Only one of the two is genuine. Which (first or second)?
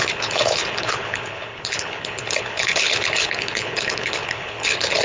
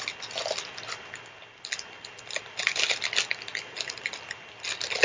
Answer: second